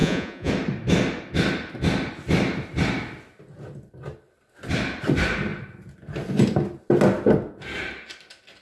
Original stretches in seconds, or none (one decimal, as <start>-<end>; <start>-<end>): 0.5-8.6